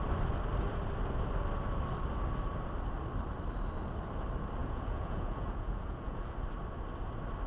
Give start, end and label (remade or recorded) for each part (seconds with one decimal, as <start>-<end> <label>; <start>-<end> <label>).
0.0-4.6 recorded; 4.6-6.2 remade; 6.2-7.5 recorded